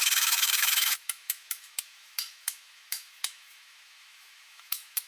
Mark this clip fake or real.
fake